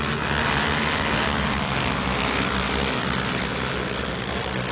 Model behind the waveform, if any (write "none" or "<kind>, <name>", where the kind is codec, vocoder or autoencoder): none